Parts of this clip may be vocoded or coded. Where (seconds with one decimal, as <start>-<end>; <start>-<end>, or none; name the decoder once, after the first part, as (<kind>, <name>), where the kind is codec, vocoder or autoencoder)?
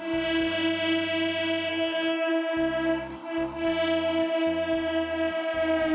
1.7-2.3 (codec, SNAC)